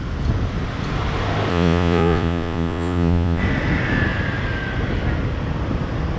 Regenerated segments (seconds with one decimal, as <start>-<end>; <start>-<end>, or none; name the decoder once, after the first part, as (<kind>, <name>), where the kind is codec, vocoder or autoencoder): 1.5-3.4 (vocoder, Vocos)